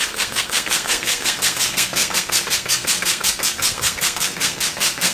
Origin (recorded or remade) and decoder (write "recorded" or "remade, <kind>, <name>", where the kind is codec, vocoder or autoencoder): remade, codec, SNAC